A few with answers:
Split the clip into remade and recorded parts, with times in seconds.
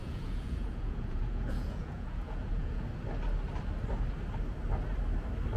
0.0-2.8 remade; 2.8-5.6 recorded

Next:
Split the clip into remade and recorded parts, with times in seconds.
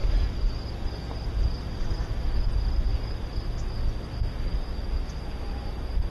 0.0-6.1 recorded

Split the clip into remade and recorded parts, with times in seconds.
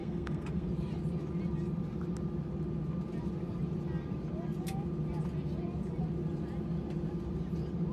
0.0-0.7 remade; 0.7-7.9 recorded